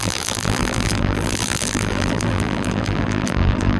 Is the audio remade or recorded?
remade